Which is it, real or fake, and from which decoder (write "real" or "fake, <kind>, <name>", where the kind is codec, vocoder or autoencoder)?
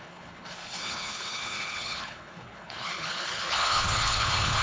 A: fake, codec, HILCodec